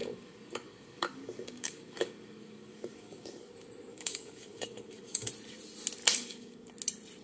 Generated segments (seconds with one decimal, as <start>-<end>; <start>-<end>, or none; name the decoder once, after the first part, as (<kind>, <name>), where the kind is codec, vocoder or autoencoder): 0.0-3.5 (codec, DAC); 3.9-5.3; 6.0-6.7